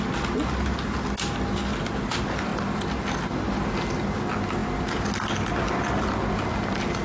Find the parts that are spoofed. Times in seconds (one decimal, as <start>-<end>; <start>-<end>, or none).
none